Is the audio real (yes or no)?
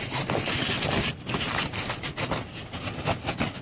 yes